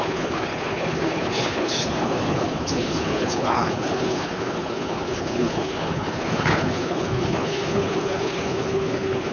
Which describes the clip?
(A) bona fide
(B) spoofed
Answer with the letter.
B